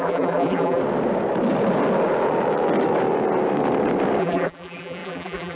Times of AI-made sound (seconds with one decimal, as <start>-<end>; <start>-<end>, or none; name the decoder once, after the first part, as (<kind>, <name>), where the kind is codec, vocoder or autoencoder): 0.0-0.8 (vocoder, BigVGAN v2); 4.2-5.6